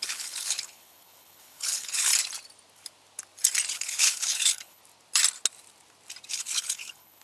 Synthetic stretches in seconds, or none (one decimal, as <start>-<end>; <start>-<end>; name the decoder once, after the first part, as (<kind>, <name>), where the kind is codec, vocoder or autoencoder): 0.0-2.1 (codec, HILCodec); 3.7-4.8; 6.3-7.2